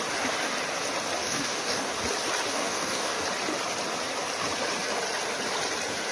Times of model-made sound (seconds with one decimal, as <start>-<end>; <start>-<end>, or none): 1.2-1.9; 2.5-3.2